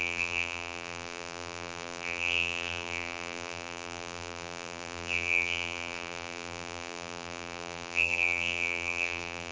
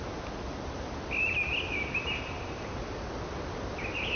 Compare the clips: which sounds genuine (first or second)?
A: second